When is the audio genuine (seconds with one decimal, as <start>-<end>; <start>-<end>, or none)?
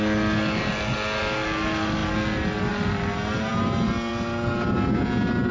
0.0-5.5